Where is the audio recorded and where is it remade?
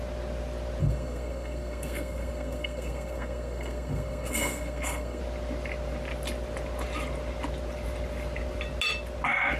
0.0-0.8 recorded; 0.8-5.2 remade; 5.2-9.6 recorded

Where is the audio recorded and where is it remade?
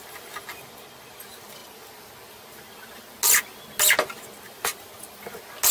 0.0-5.7 recorded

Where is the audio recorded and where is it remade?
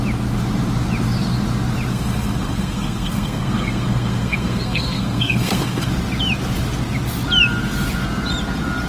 0.0-1.9 recorded; 1.9-5.9 remade; 5.9-8.9 recorded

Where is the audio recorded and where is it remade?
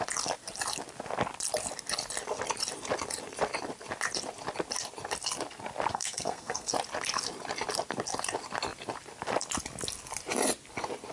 0.0-5.9 recorded; 5.9-6.7 remade; 6.7-11.1 recorded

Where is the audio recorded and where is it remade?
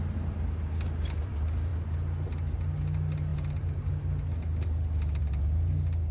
0.0-6.1 recorded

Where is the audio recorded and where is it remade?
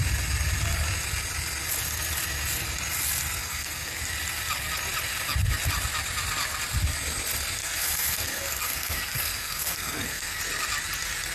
0.0-3.4 recorded; 3.4-4.0 remade; 4.0-7.6 recorded; 7.6-10.4 remade; 10.4-11.3 recorded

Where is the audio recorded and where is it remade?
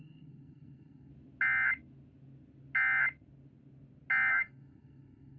0.0-1.1 remade; 1.1-4.3 recorded; 4.3-5.4 remade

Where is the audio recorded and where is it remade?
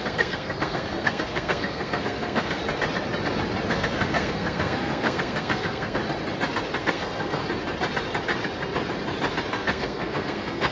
0.0-2.6 remade; 2.6-3.7 recorded; 3.7-6.0 remade; 6.0-6.8 recorded; 6.8-7.4 remade; 7.4-9.5 recorded; 9.5-10.7 remade